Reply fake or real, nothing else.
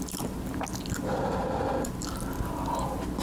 real